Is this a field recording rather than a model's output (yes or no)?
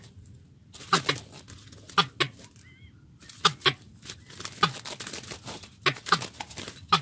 yes